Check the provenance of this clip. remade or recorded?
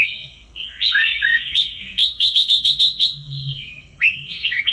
remade